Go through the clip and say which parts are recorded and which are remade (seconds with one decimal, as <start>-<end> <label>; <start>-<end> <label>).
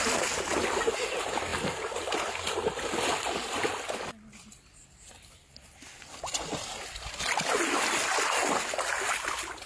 0.0-9.7 recorded